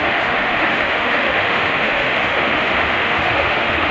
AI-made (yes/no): yes